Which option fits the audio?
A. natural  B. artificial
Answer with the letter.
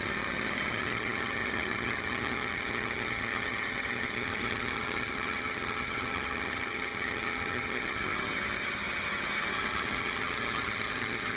B